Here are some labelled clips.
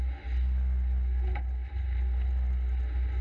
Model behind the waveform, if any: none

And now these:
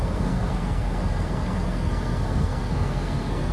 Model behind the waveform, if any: codec, SNAC